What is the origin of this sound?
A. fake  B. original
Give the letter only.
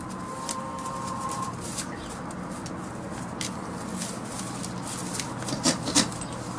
B